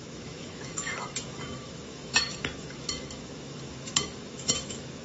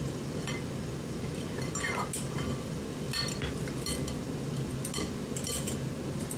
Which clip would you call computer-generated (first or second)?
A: first